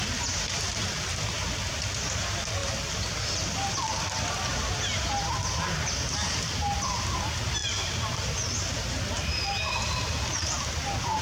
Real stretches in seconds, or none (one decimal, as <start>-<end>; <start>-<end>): 0.0-11.2